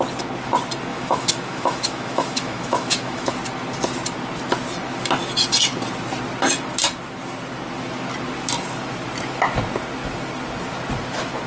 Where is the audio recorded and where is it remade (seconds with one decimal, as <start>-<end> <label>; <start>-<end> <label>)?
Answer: 0.0-0.9 recorded; 0.9-3.3 remade; 3.3-11.5 recorded